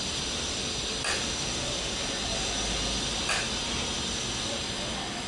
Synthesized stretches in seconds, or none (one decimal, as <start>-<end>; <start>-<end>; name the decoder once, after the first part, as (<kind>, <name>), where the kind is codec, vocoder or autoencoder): none